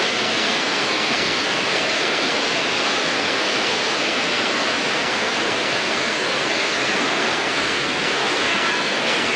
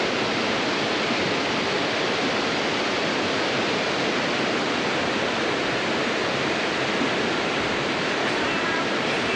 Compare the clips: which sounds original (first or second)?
second